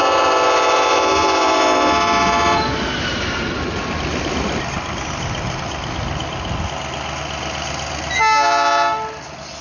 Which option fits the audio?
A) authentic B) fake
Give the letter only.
A